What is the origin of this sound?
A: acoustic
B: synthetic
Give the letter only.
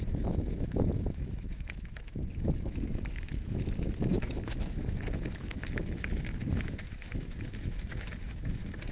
B